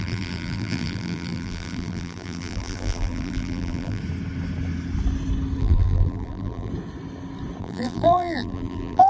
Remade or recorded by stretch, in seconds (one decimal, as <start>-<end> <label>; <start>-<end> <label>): 0.0-4.0 remade; 4.0-5.6 recorded; 5.6-6.7 remade; 6.7-7.6 recorded; 7.6-9.1 remade

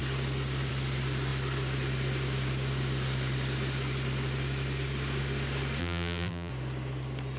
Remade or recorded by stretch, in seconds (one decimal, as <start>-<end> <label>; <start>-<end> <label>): 0.0-5.8 recorded; 5.8-6.5 remade; 6.5-7.4 recorded